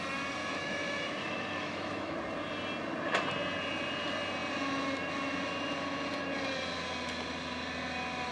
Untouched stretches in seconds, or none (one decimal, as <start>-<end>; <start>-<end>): 0.0-0.4; 2.2-8.3